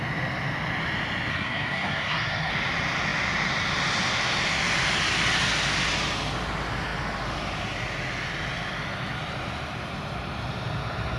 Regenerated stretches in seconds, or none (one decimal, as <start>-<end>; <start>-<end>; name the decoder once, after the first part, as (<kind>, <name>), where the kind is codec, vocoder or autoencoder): 1.3-2.5 (codec, SNAC)